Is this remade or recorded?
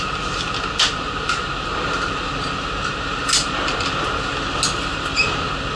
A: recorded